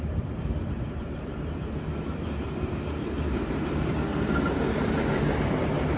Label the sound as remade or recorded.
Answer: remade